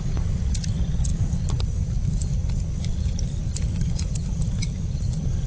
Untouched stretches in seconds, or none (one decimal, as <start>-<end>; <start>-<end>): 0.0-5.5